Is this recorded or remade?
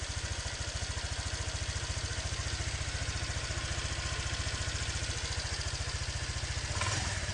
recorded